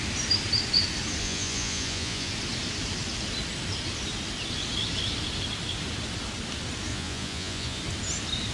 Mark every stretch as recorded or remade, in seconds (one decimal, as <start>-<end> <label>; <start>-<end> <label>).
0.0-1.2 recorded; 1.2-2.3 remade; 2.3-6.9 recorded; 6.9-7.8 remade; 7.8-8.5 recorded